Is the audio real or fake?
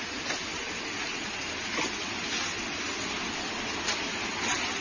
real